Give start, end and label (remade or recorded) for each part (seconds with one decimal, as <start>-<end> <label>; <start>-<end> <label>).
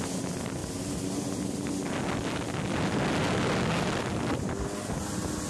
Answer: 0.0-5.5 recorded